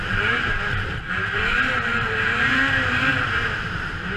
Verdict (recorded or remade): remade